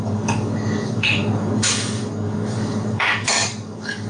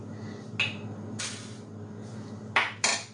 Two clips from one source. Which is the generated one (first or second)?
first